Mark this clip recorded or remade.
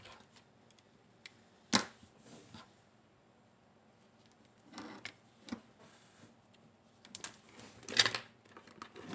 recorded